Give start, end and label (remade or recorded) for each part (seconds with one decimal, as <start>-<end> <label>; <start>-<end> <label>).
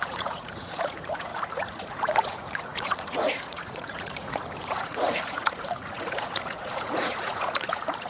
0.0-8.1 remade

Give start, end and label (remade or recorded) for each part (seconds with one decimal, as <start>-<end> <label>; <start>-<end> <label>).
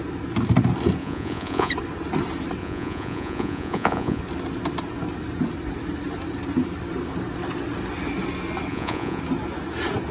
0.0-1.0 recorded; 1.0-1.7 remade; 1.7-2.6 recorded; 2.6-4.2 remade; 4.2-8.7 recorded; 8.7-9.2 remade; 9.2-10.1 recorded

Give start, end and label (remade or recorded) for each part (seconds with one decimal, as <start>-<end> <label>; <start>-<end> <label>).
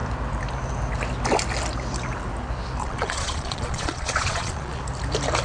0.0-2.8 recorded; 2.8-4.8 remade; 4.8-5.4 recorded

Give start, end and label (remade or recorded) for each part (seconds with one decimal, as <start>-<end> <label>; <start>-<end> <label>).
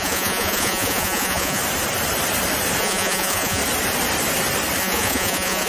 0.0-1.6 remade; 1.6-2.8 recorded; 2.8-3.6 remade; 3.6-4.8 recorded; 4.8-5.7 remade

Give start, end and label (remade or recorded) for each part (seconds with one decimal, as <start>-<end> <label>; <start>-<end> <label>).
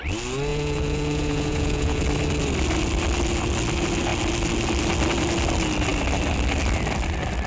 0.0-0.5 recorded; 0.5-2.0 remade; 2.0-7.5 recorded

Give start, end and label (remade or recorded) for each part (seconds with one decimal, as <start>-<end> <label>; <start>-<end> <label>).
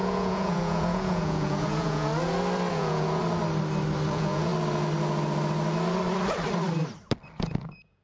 0.0-2.1 remade; 2.1-2.7 recorded; 2.7-3.2 remade; 3.2-4.1 recorded; 4.1-4.5 remade; 4.5-7.4 recorded; 7.4-8.0 remade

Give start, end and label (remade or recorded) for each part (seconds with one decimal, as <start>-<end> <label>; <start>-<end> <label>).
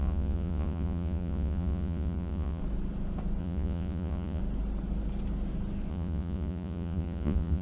0.0-2.6 remade; 2.6-3.4 recorded; 3.4-4.4 remade; 4.4-5.9 recorded; 5.9-7.6 remade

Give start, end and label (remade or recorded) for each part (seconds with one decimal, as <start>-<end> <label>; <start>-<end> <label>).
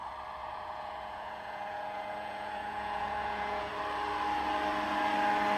0.0-0.4 recorded; 0.4-3.7 remade; 3.7-5.6 recorded